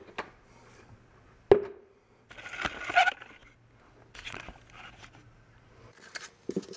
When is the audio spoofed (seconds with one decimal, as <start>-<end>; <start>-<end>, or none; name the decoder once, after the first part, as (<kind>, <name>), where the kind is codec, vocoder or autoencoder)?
none